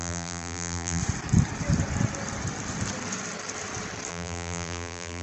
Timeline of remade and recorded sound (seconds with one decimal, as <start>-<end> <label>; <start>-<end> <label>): 0.0-1.0 remade; 1.0-4.1 recorded; 4.1-5.2 remade